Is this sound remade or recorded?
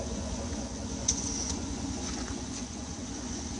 remade